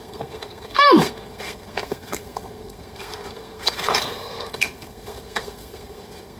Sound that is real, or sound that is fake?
fake